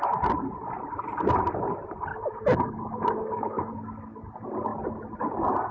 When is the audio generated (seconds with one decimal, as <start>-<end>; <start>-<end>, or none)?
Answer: 2.1-3.7